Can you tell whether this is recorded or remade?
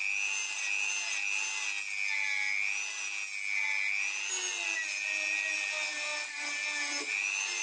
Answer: recorded